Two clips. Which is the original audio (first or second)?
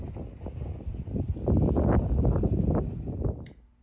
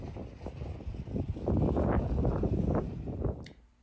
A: first